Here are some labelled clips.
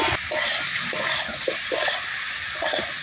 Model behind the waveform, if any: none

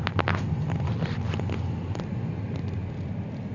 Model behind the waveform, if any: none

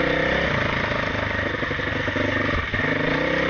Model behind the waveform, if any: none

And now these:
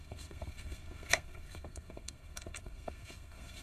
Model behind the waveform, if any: codec, SNAC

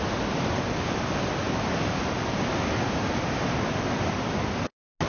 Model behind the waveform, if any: none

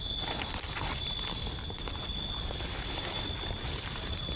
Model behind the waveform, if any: none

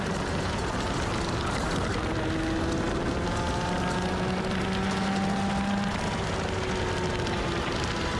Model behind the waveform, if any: none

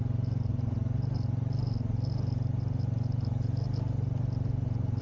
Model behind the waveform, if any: none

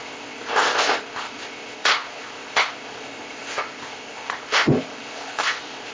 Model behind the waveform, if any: codec, ZipCodec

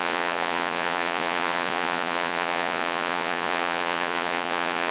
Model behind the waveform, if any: vocoder, Vocos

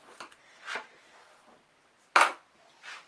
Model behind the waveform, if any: none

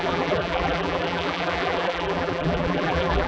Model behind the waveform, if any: vocoder, BigVGAN v2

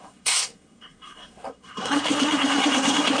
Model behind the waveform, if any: codec, SNAC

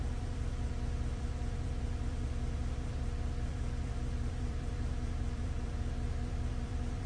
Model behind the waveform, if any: vocoder, BigVGAN v2